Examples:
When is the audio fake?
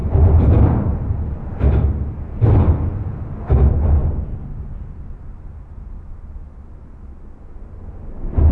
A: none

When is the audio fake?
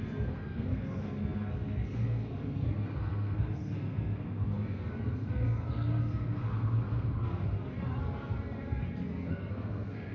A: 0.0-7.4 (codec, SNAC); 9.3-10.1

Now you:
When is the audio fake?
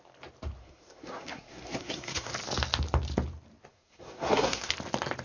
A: 0.6-2.3 (codec, SNAC); 3.7-4.7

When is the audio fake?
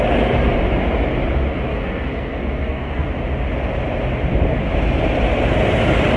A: 1.7-3.1 (codec, SNAC)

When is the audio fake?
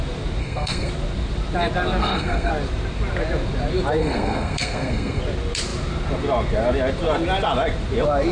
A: 0.4-0.9 (codec, SNAC); 2.0-2.5; 4.0-5.2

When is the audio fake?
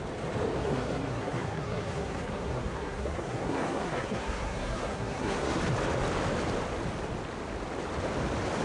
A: 0.6-5.6 (codec, SNAC)